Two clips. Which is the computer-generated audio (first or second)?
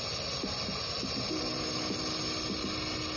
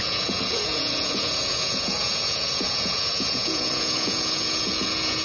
second